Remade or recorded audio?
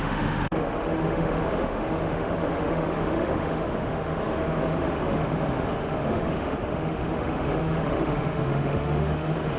remade